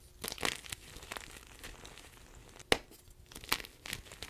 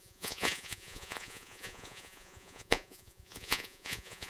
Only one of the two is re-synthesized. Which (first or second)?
second